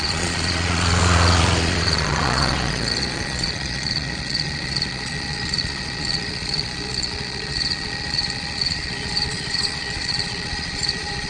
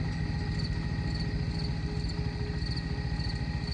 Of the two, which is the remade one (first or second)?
first